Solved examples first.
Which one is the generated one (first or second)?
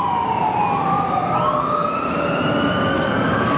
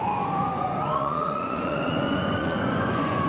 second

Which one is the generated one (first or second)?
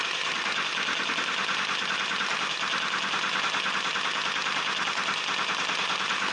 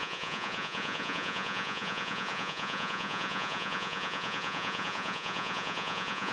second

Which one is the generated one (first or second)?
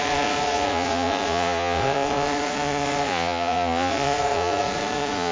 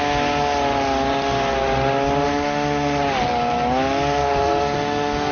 first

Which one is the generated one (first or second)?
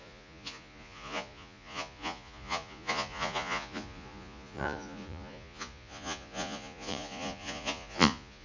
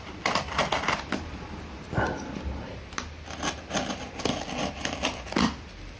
first